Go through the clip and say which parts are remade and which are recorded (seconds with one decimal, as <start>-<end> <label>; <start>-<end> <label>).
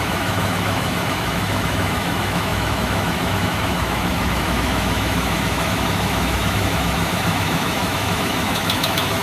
0.0-9.2 remade